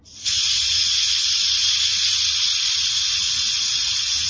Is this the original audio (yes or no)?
no